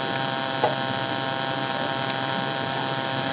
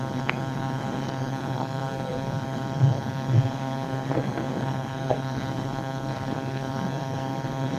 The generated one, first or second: second